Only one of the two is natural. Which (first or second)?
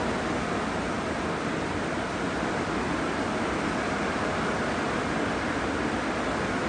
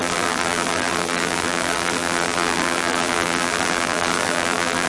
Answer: first